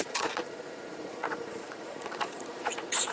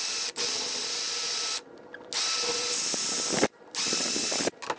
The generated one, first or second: first